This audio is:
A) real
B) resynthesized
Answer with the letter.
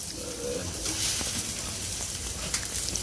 A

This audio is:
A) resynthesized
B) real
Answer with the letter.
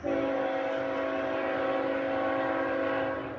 B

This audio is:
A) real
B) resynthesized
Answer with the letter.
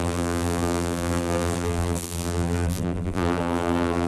B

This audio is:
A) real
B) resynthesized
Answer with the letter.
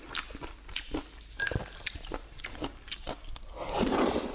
B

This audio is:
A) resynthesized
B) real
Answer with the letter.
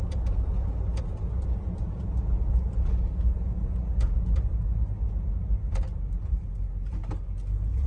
B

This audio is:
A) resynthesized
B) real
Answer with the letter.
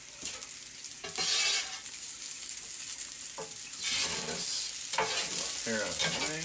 B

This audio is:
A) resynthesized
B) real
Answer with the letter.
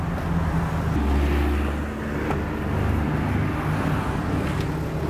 B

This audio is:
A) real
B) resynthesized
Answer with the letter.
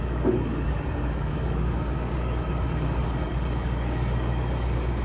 B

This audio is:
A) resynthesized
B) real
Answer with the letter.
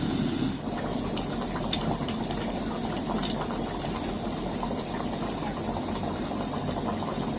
B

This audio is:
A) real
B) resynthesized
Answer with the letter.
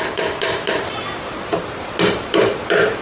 B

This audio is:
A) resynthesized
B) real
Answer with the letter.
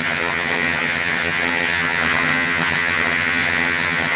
A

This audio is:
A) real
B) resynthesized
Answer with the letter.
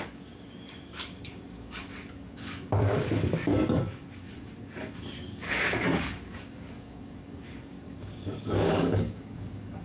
B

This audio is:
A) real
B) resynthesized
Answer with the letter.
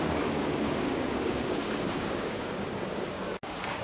B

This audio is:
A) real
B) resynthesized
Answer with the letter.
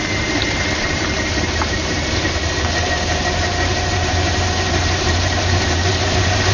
B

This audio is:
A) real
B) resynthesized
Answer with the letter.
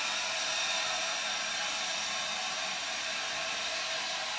A